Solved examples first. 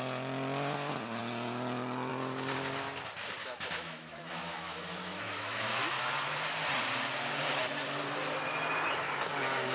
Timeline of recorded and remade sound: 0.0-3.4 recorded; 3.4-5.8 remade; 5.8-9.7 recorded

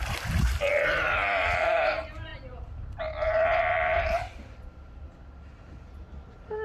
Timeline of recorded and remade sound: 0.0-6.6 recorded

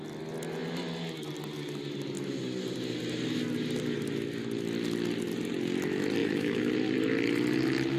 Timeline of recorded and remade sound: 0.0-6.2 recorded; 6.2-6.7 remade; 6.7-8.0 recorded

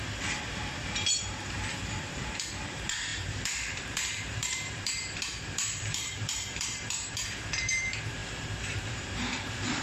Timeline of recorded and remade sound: 0.0-9.8 remade

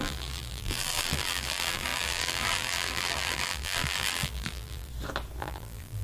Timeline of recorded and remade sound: 0.0-4.9 remade; 4.9-5.4 recorded; 5.4-6.0 remade